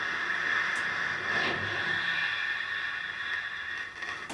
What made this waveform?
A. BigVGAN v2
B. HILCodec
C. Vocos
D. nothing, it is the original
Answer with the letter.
D